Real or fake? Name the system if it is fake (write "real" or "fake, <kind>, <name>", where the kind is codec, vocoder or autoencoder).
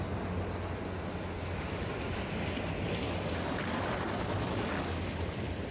real